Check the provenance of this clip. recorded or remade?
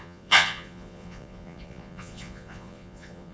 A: remade